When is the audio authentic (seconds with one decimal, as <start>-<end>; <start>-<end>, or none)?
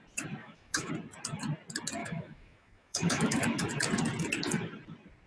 0.0-0.4; 0.9-2.0; 3.4-5.3